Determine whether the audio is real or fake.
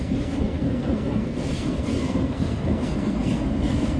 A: fake